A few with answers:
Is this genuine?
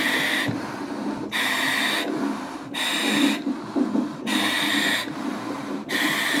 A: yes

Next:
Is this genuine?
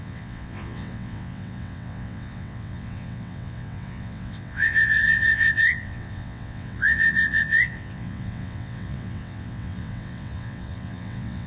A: no